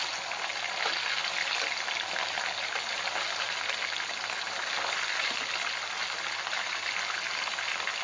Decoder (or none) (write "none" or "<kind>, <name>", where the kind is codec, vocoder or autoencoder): none